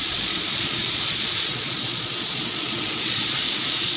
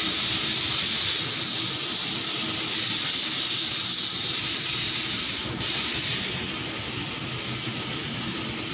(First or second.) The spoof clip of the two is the first